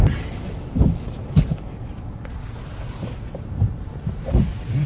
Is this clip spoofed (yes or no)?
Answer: yes